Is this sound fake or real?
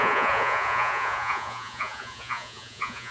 fake